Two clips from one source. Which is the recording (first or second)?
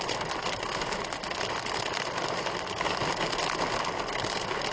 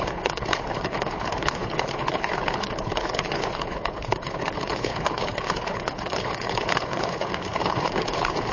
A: first